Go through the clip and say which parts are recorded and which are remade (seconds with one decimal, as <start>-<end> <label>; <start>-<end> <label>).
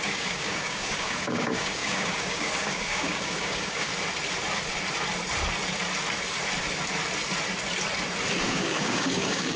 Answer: 0.0-3.9 remade; 3.9-8.4 recorded; 8.4-9.6 remade